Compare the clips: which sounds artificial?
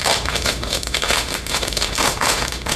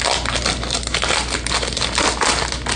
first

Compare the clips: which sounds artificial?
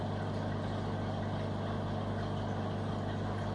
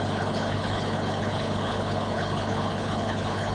second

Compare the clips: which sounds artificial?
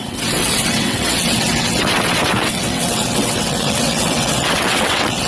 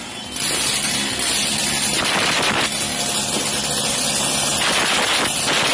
first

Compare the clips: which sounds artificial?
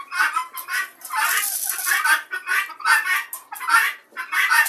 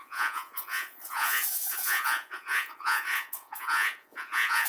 second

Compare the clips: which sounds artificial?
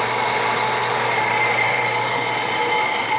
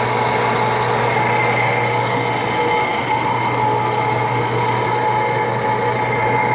first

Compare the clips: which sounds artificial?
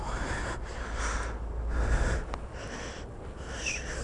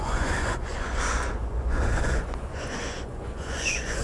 second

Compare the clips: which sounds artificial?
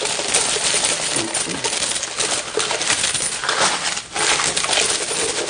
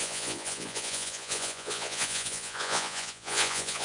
second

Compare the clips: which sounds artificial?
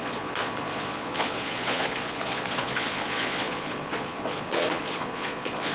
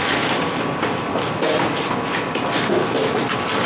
first